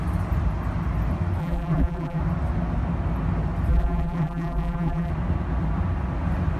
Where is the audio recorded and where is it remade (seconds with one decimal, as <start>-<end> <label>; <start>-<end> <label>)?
0.0-1.4 recorded; 1.4-2.2 remade; 2.2-3.7 recorded; 3.7-5.1 remade; 5.1-6.6 recorded